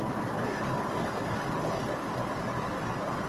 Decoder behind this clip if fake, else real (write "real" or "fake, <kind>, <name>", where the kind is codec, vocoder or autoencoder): real